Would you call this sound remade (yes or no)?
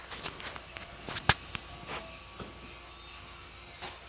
no